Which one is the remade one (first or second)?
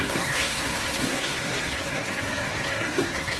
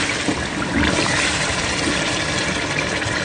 first